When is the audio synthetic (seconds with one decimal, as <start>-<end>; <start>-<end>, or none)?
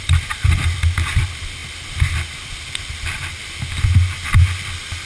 none